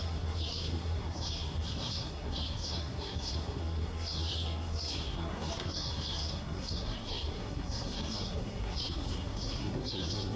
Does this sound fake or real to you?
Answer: fake